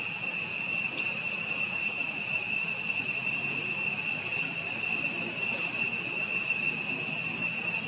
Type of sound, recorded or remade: recorded